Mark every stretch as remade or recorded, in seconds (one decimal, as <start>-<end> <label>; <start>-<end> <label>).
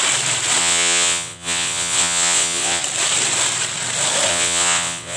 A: 0.0-0.6 recorded; 0.6-2.8 remade; 2.8-4.3 recorded; 4.3-5.2 remade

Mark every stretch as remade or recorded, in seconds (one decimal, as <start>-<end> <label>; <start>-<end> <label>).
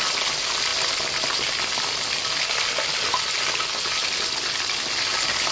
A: 0.0-5.5 recorded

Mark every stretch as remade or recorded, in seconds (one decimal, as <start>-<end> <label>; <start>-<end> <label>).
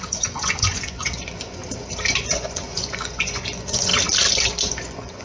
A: 0.0-1.6 remade; 1.6-2.2 recorded; 2.2-3.9 remade; 3.9-4.7 recorded; 4.7-5.2 remade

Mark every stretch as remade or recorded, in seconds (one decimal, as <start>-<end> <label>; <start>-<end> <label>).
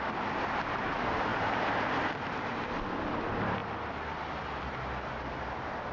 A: 0.0-1.3 remade; 1.3-1.9 recorded; 1.9-5.9 remade